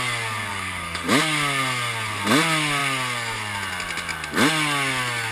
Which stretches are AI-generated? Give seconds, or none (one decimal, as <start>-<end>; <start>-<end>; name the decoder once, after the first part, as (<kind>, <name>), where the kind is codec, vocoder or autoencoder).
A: 0.5-1.1 (codec, DAC)